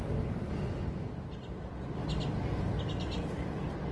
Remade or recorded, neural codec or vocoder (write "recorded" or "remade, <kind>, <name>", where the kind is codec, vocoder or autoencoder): recorded